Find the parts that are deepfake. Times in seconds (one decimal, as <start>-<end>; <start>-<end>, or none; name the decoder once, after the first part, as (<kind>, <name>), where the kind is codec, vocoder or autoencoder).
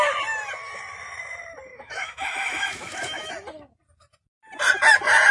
1.7-3.3 (autoencoder, DAC-VAE)